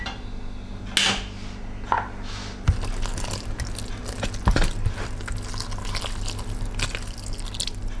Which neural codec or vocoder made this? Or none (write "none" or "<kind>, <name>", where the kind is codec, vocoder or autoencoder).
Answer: none